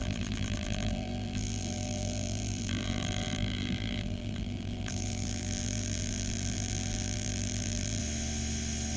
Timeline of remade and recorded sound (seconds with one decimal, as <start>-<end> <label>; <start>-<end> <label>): 0.0-8.0 remade; 8.0-9.0 recorded